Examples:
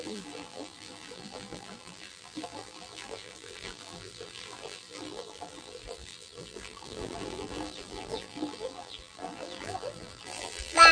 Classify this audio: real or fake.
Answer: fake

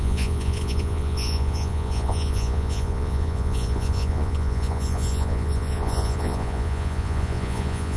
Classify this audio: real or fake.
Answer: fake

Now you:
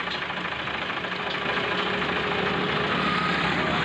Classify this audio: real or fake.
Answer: real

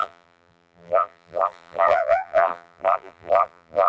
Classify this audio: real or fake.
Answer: fake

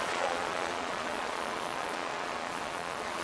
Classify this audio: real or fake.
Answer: fake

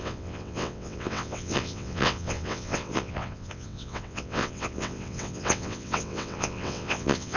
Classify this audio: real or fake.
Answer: fake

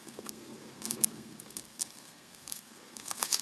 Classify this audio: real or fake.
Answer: fake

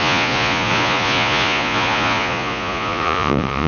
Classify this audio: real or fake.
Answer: fake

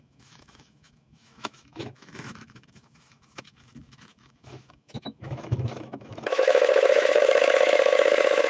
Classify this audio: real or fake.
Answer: fake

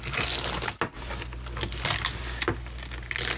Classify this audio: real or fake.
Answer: real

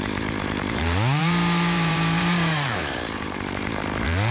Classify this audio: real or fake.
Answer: fake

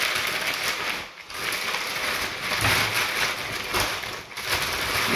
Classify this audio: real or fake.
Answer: real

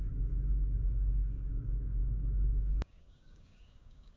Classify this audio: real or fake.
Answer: fake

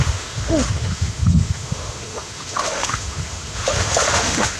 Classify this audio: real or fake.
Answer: fake